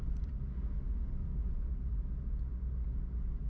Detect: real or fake real